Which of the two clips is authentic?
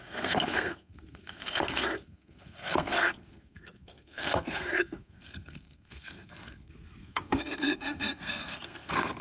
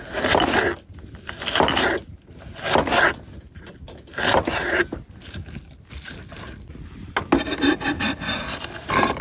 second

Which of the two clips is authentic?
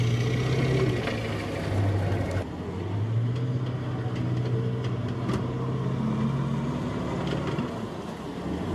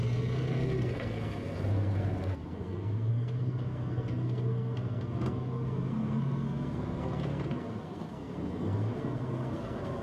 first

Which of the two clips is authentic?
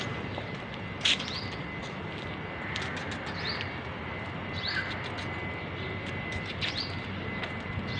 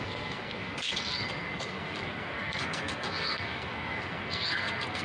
first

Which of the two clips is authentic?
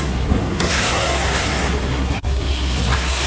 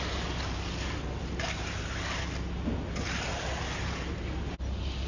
second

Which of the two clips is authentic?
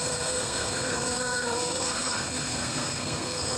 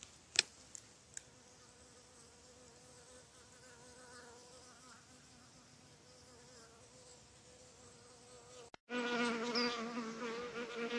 second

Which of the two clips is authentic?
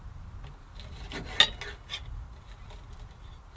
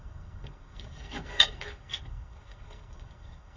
first